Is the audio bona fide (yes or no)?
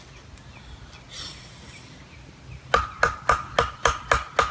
yes